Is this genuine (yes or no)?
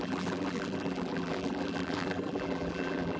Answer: no